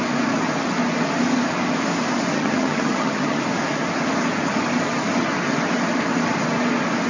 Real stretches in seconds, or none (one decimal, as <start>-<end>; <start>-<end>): 0.0-2.3; 3.4-7.1